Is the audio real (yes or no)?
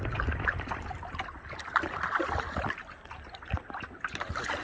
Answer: yes